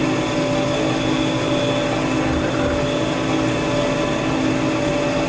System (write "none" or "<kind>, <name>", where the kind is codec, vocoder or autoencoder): none